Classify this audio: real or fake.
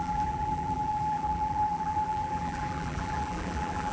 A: fake